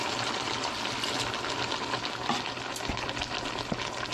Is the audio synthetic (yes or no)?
no